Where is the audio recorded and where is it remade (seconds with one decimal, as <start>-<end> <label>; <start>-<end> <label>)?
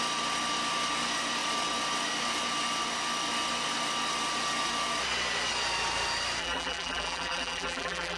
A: 0.0-6.4 recorded; 6.4-8.2 remade